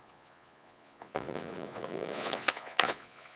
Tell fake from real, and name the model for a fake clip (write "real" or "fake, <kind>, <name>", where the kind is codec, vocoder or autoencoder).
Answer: fake, vocoder, Vocos